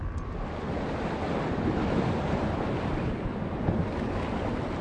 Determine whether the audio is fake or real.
real